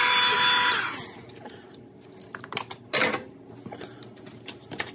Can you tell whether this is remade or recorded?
recorded